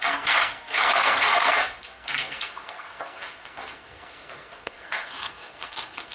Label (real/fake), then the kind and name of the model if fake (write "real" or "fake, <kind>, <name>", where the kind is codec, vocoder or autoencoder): fake, codec, SNAC